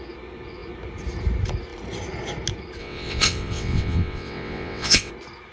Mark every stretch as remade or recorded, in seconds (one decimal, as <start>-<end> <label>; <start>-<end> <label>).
0.0-2.8 recorded; 2.8-5.1 remade; 5.1-5.5 recorded

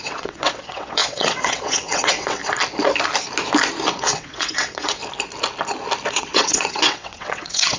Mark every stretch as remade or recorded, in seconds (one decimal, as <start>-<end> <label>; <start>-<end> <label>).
0.0-2.4 remade; 2.4-3.9 recorded; 3.9-5.0 remade; 5.0-6.1 recorded; 6.1-7.8 remade

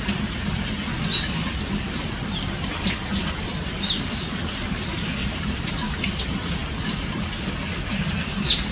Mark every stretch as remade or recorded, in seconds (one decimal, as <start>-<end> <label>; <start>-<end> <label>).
0.0-8.7 recorded

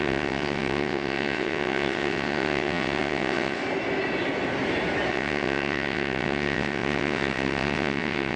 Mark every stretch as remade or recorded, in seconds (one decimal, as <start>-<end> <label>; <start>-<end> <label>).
0.0-3.6 remade; 3.6-5.1 recorded; 5.1-8.4 remade

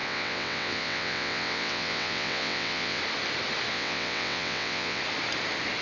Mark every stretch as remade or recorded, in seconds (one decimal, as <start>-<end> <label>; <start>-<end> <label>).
0.0-3.0 remade; 3.0-3.7 recorded; 3.7-5.0 remade; 5.0-5.8 recorded